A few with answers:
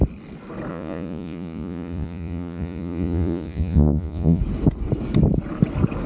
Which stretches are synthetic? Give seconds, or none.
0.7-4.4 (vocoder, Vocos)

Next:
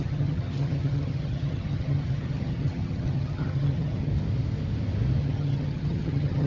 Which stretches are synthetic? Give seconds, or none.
0.0-4.1 (vocoder, HiFi-GAN); 5.2-6.5

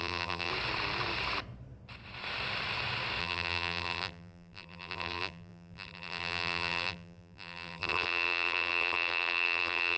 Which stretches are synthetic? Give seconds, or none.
0.0-0.5 (vocoder, BigVGAN v2); 3.2-10.0

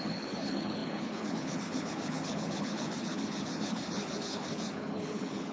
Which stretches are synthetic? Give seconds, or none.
0.0-5.5 (codec, HILCodec)

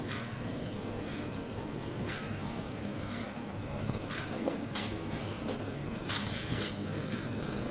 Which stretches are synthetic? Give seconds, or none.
0.0-7.7 (codec, SNAC)

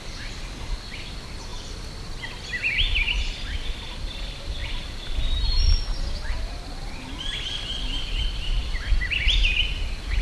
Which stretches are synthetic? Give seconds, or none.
4.6-7.6 (vocoder, BigVGAN v2); 8.6-9.4

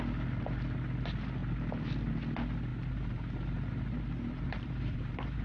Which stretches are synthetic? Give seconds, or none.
2.7-5.4 (vocoder, BigVGAN v2)

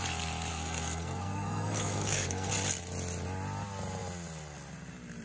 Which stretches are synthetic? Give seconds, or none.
0.5-2.5 (codec, SNAC)